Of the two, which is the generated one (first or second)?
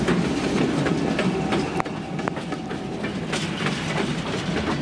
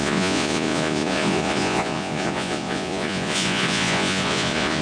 second